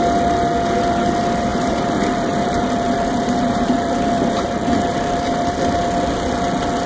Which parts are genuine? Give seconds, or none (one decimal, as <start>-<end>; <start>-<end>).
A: 0.0-1.5; 5.6-6.9